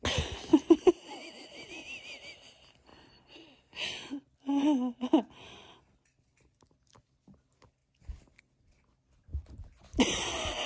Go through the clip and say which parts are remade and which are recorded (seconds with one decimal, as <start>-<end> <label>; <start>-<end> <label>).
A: 0.0-0.5 recorded; 0.5-1.2 remade; 1.2-7.8 recorded; 7.8-8.4 remade; 8.4-9.3 recorded; 9.3-10.7 remade